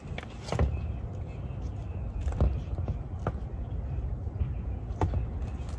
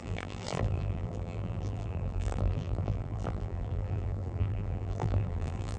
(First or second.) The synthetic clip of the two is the second